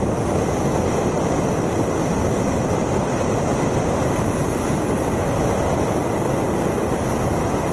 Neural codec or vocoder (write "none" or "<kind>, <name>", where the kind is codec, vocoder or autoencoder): none